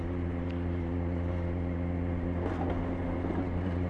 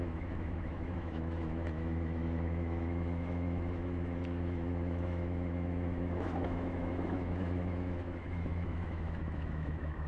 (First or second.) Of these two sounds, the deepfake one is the second